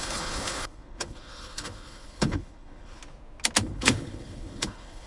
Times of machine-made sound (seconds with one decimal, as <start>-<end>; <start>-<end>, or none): 0.0-3.0; 3.6-5.1